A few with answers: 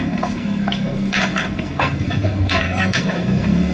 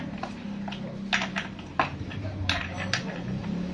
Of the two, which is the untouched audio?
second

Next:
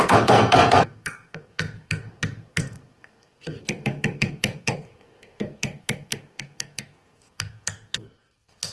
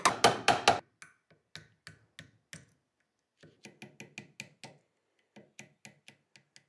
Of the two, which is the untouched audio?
second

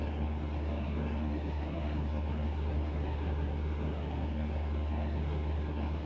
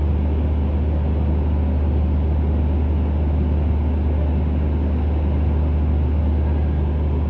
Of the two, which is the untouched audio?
second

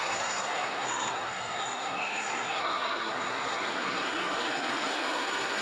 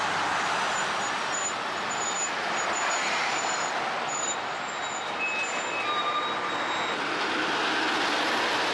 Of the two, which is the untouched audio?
second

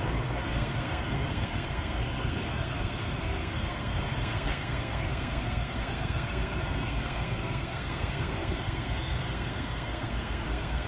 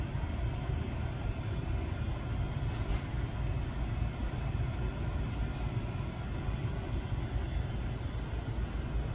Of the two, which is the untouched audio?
second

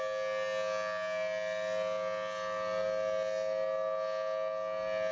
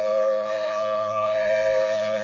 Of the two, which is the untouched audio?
first